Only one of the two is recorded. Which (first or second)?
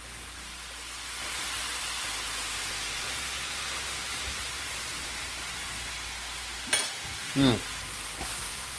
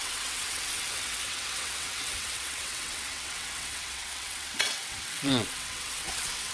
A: first